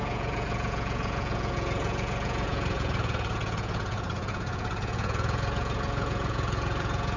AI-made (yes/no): yes